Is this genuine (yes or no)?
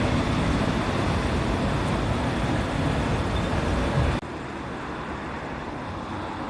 yes